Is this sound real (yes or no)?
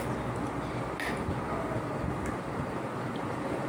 yes